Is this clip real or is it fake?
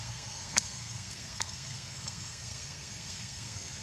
fake